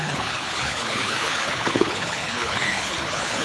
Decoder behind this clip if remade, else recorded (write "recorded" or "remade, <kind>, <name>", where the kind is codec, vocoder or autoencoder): remade, codec, HILCodec